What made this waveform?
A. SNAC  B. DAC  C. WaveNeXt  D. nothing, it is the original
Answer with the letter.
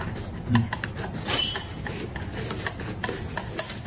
D